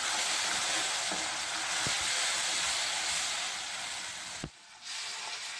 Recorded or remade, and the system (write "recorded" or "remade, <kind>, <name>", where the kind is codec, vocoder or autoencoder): recorded